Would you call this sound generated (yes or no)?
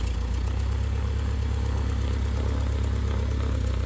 no